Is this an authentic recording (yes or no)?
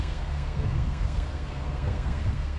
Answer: no